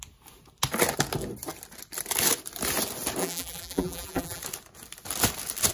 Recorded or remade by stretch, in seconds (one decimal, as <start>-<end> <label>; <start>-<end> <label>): 0.0-3.2 recorded; 3.2-4.4 remade; 4.4-5.7 recorded